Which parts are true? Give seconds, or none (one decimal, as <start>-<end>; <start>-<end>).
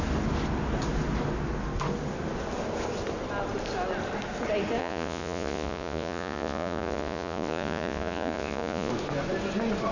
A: 0.0-4.8; 8.9-9.9